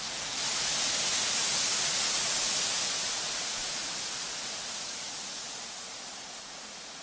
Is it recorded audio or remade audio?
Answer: remade